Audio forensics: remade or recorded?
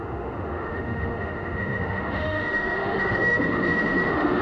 remade